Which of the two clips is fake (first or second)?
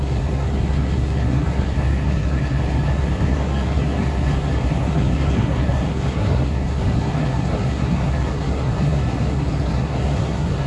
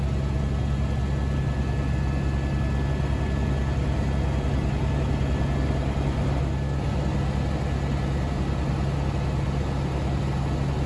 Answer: first